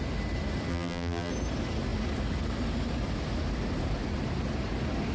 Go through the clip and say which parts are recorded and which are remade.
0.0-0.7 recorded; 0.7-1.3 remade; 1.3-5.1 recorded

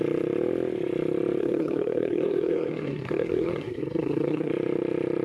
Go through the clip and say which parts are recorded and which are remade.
0.0-1.4 recorded; 1.4-4.5 remade; 4.5-5.2 recorded

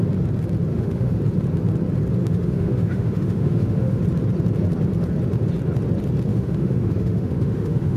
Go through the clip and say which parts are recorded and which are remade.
0.0-0.7 recorded; 0.7-1.2 remade; 1.2-2.2 recorded; 2.2-4.0 remade; 4.0-6.3 recorded; 6.3-8.0 remade

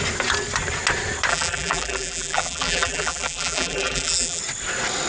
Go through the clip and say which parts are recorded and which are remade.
0.0-1.3 recorded; 1.3-4.4 remade; 4.4-5.1 recorded

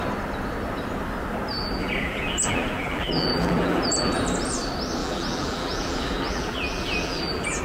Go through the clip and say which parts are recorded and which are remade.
0.0-1.8 recorded; 1.8-4.1 remade; 4.1-5.0 recorded; 5.0-7.6 remade

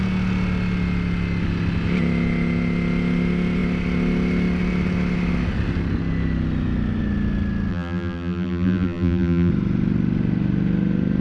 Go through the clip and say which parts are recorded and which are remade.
0.0-7.7 recorded; 7.7-9.5 remade; 9.5-11.2 recorded

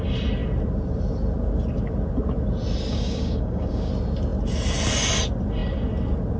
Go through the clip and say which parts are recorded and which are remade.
0.0-2.9 recorded; 2.9-3.9 remade; 3.9-6.4 recorded

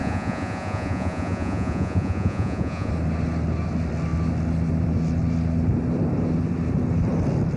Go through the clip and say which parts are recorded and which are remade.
0.0-2.9 remade; 2.9-7.6 recorded